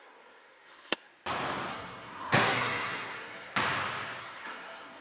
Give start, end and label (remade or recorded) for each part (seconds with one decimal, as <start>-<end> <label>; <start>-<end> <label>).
0.0-1.1 remade; 1.1-1.7 recorded; 1.7-3.5 remade; 3.5-4.2 recorded; 4.2-5.0 remade